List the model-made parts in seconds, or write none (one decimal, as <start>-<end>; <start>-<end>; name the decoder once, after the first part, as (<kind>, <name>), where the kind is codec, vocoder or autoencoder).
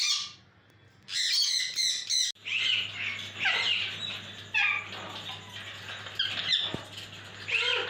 none